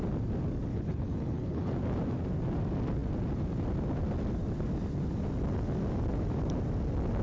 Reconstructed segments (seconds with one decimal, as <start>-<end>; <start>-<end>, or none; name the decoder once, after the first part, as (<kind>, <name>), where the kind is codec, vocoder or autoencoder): 0.7-1.7 (codec, HILCodec)